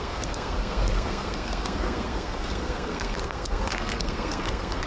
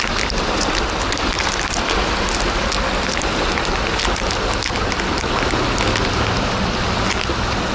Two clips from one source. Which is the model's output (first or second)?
first